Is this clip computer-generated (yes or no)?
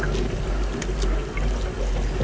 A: no